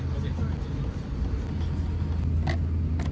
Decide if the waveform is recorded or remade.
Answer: recorded